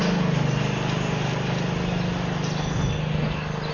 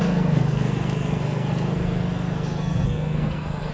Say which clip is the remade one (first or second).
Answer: second